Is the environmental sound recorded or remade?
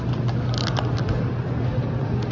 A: recorded